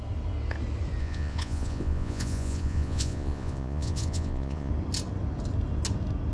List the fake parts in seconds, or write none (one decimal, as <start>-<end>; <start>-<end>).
1.0-4.7